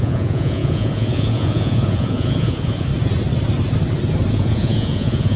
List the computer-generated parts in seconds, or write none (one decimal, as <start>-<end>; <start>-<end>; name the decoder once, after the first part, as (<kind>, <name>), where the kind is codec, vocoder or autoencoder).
0.0-2.9 (vocoder, Vocos); 4.3-5.4